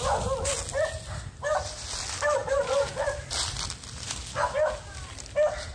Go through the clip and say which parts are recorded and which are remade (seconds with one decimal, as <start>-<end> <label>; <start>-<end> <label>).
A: 0.0-5.7 recorded